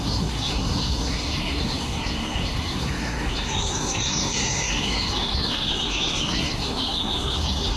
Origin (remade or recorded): remade